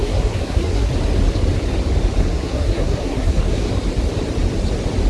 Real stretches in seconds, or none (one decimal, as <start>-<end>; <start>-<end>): 0.9-2.2; 3.7-5.1